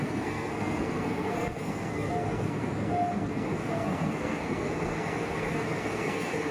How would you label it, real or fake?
fake